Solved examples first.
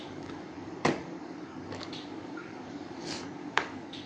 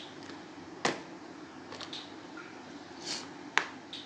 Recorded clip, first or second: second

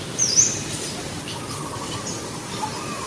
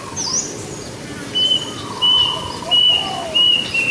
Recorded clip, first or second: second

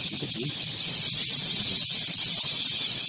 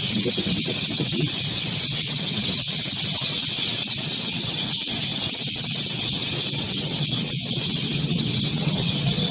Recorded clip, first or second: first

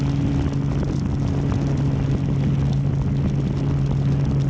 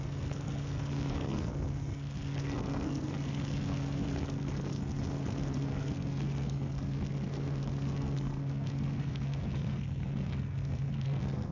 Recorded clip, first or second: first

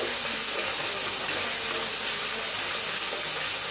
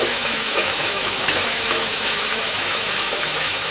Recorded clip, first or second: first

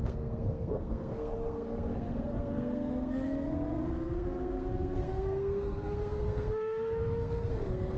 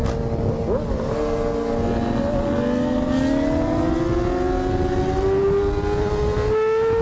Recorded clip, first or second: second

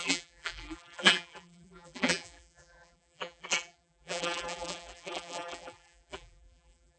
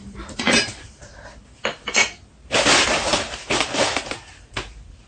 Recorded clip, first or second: second